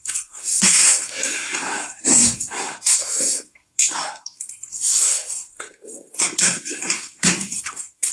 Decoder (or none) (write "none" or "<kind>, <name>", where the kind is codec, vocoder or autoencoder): codec, SNAC